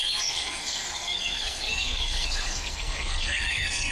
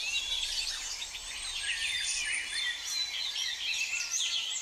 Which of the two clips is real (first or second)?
second